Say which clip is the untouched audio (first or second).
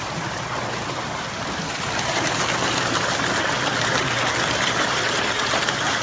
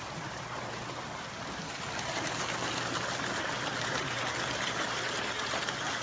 second